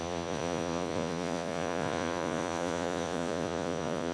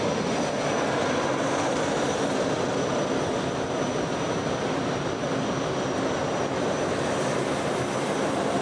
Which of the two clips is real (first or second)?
second